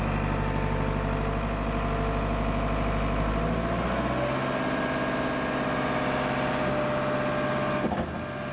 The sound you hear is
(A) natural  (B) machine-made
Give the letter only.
A